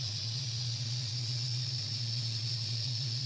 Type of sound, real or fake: fake